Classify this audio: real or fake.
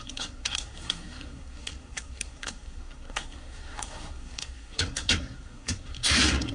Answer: fake